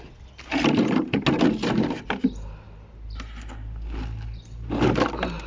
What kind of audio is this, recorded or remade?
recorded